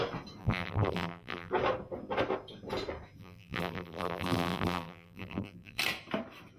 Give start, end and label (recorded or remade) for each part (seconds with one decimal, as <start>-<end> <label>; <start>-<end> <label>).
0.0-0.4 recorded; 0.4-1.5 remade; 1.5-3.2 recorded; 3.2-5.8 remade; 5.8-6.6 recorded